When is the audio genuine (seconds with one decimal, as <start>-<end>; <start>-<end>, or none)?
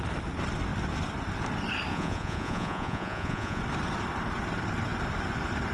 0.0-1.9; 3.6-5.7